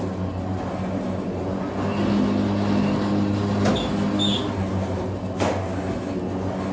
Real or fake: real